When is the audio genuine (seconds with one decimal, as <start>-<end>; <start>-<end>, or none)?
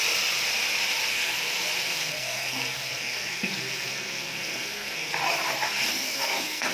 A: 0.0-1.1; 5.1-5.9